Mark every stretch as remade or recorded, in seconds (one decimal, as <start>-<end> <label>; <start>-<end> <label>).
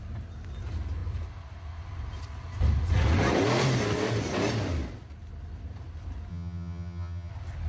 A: 0.0-6.3 recorded; 6.3-7.3 remade; 7.3-7.7 recorded